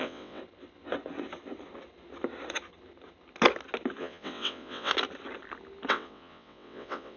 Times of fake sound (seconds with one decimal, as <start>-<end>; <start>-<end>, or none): 0.0-0.4; 4.0-4.9; 5.9-7.2